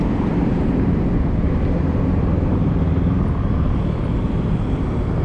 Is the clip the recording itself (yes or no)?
yes